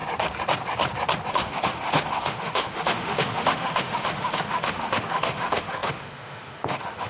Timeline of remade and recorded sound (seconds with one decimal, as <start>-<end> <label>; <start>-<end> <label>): 0.0-1.3 recorded; 1.3-7.1 remade